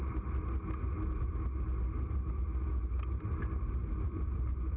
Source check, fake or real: real